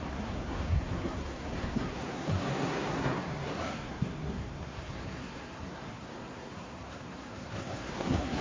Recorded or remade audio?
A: remade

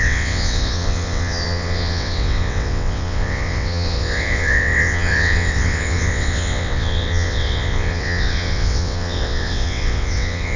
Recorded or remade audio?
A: remade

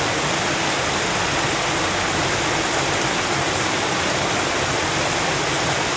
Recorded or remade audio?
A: recorded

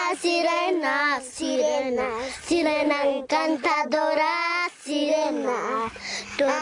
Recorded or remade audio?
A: recorded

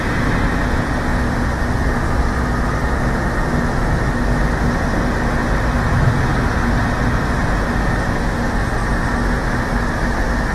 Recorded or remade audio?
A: recorded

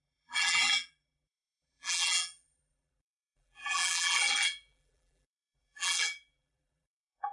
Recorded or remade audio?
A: remade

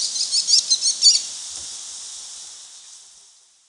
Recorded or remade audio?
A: recorded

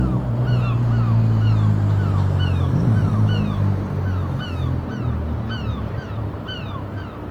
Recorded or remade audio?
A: recorded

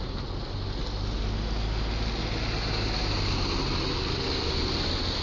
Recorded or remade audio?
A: recorded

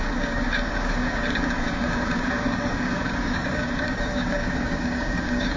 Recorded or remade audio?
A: remade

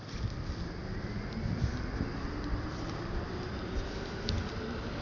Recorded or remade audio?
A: recorded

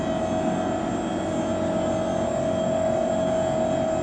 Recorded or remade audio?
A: recorded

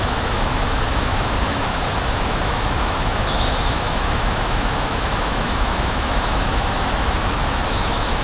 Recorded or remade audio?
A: remade